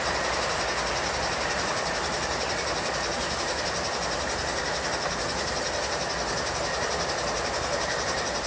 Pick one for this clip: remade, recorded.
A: recorded